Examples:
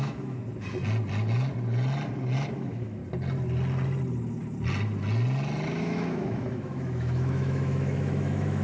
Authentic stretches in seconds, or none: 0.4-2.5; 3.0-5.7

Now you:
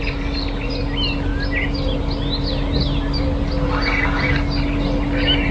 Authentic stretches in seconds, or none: 0.0-5.5

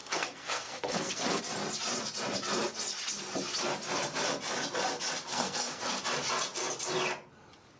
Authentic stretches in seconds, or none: 1.4-5.3; 6.0-7.8